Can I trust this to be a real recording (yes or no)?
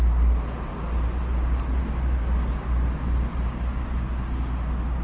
yes